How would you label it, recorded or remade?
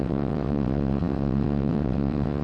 remade